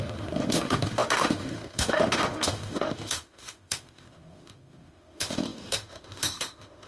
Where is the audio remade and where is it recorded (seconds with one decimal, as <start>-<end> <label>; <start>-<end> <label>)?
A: 0.0-6.9 remade